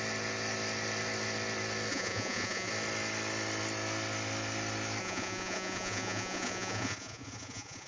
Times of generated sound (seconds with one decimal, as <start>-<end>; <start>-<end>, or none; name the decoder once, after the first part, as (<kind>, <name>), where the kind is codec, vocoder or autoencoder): 1.9-2.7 (vocoder, Vocos); 5.0-7.9